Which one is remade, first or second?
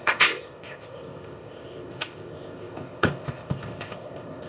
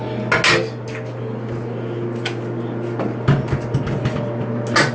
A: first